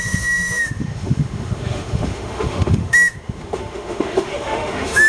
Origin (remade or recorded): remade